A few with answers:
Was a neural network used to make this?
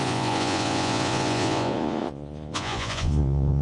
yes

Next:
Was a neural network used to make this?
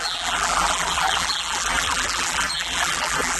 yes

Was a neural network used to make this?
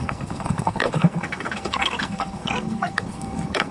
yes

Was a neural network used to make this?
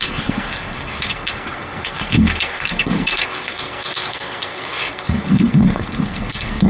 yes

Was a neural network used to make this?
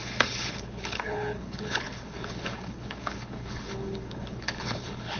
yes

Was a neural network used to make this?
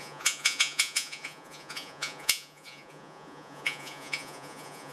yes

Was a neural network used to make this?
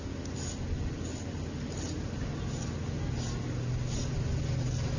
no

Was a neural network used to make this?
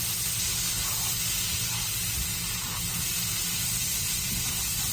no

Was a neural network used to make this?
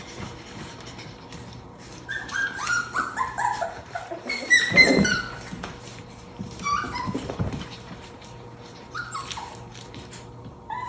yes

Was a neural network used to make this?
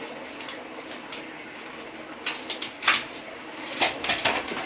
no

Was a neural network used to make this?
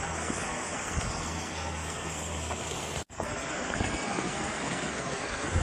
yes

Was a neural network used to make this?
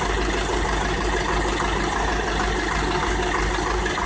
no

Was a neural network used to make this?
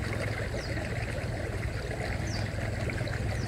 no